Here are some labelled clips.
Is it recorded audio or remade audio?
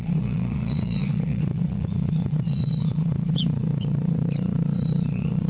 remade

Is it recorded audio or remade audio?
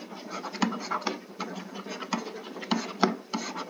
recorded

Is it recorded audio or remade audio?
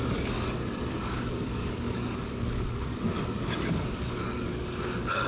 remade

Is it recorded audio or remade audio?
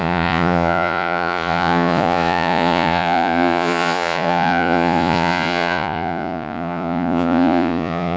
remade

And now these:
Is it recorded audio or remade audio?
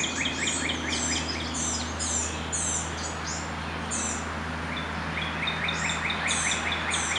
recorded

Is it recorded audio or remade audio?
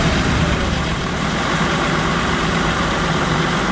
remade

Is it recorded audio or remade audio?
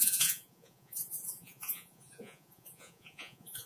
remade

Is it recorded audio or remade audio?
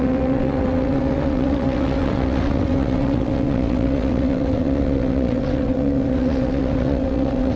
remade